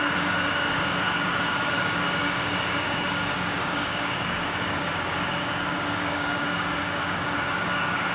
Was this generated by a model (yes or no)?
yes